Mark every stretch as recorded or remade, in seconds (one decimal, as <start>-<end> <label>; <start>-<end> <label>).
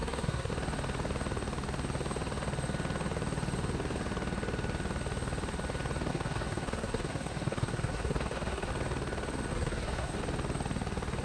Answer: 0.0-0.5 remade; 0.5-6.1 recorded; 6.1-8.7 remade; 8.7-9.5 recorded; 9.5-10.2 remade; 10.2-11.2 recorded